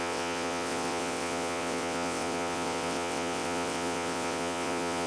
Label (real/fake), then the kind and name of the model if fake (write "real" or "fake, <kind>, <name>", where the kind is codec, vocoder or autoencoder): fake, vocoder, WaveNeXt